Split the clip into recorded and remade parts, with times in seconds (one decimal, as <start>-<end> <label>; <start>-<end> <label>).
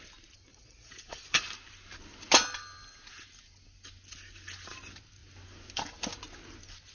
0.0-0.5 recorded; 0.5-1.4 remade; 1.4-6.9 recorded